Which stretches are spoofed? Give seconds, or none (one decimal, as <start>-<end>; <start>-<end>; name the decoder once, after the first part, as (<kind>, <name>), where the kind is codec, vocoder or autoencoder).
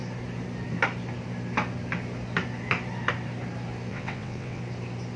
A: 3.9-4.6 (vocoder, WaveNeXt)